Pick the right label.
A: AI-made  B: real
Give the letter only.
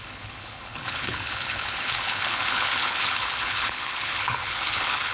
A